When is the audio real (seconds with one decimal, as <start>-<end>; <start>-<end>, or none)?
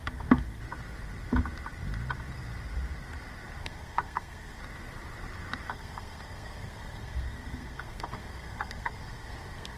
0.6-3.6; 4.6-5.7